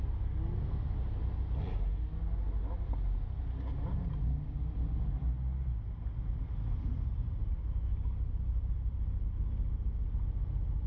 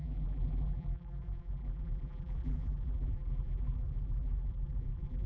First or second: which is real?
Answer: first